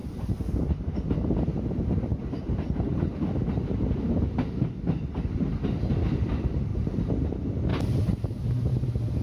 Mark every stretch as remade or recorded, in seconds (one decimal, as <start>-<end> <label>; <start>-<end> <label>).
0.0-1.0 remade; 1.0-1.5 recorded; 1.5-3.3 remade; 3.3-6.7 recorded; 6.7-7.3 remade; 7.3-9.2 recorded